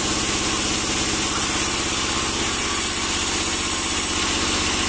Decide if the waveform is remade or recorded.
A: recorded